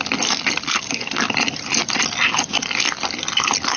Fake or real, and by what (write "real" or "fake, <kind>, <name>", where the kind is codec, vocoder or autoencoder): real